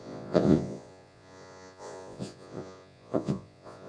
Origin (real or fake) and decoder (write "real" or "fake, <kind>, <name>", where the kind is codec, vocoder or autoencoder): fake, vocoder, Vocos